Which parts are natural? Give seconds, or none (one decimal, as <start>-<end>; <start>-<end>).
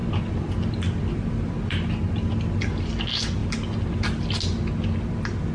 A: 0.0-5.5